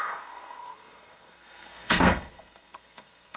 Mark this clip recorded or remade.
remade